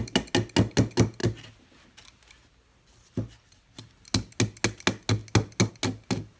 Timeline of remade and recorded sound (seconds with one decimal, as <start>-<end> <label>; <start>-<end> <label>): 0.0-6.4 recorded